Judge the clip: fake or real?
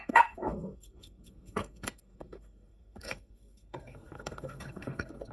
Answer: fake